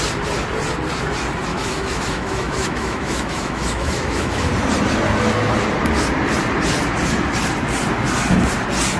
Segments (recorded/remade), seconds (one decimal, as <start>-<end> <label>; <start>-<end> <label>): 0.0-1.5 recorded; 1.5-4.5 remade; 4.5-9.0 recorded